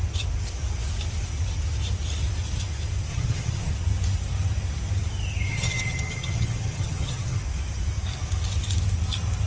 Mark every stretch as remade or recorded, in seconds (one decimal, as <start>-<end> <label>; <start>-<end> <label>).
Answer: 0.0-3.1 recorded; 3.1-3.7 remade; 3.7-5.5 recorded; 5.5-7.4 remade; 7.4-9.5 recorded